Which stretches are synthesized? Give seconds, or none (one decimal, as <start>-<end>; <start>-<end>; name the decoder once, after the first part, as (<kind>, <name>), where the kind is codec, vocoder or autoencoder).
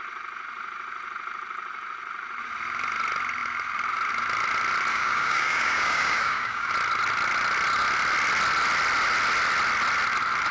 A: 4.9-6.7 (codec, DAC)